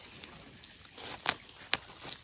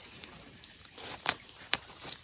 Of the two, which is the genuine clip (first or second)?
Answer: first